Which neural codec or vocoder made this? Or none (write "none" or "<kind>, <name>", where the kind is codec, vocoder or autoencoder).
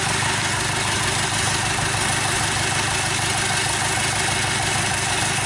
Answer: none